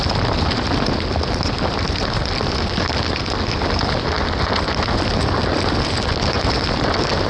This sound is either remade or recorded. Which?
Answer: recorded